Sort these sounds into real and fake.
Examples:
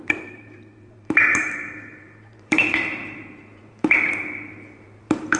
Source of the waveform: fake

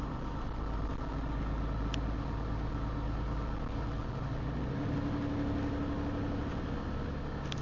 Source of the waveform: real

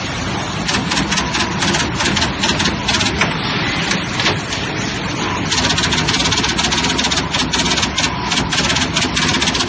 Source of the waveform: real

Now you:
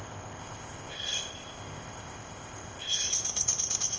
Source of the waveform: fake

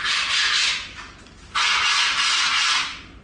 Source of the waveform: real